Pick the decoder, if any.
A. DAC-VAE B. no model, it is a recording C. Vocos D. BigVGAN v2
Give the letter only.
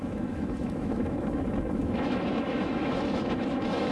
A